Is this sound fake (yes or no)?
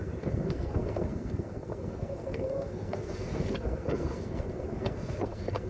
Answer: yes